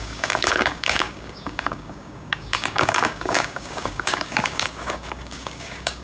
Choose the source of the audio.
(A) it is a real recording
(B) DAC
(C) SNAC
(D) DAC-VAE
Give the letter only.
B